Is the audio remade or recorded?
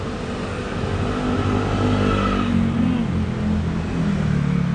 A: recorded